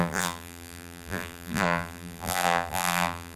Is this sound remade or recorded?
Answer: remade